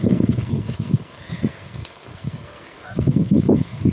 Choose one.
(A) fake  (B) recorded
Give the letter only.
A